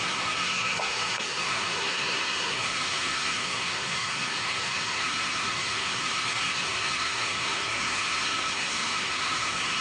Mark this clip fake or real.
fake